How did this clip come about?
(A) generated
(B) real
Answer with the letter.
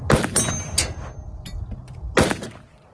B